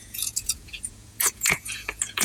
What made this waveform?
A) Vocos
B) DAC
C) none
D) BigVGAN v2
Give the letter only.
A